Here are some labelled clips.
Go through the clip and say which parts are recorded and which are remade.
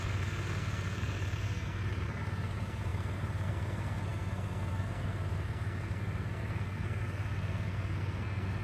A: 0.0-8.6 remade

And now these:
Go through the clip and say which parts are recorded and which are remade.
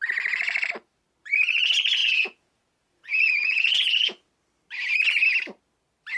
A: 0.0-2.0 recorded; 2.0-4.3 remade; 4.3-6.2 recorded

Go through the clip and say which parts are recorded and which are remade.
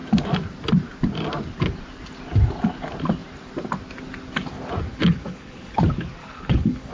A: 0.0-4.9 recorded; 4.9-5.8 remade; 5.8-6.2 recorded; 6.2-6.9 remade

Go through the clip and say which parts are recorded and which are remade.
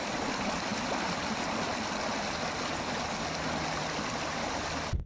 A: 0.0-5.1 recorded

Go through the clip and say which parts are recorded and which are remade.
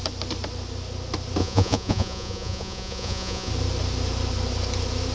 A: 0.0-1.4 recorded; 1.4-3.5 remade; 3.5-5.1 recorded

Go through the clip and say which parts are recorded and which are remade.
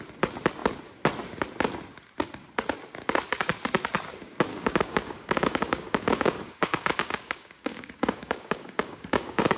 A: 0.0-4.5 recorded; 4.5-9.6 remade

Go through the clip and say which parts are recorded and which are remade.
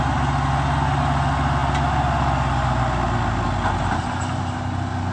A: 0.0-5.1 recorded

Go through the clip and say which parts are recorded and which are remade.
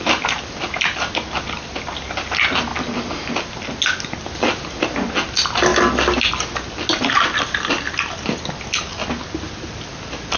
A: 0.0-10.4 recorded